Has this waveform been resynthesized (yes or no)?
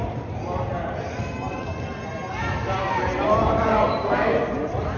no